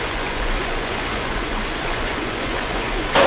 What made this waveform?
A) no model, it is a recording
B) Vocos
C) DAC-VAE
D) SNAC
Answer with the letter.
B